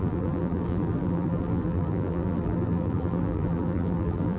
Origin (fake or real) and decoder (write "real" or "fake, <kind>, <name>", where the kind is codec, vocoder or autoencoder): fake, vocoder, BigVGAN v2